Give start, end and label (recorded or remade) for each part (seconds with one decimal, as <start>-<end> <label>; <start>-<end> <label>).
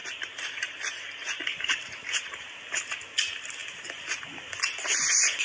0.0-5.4 recorded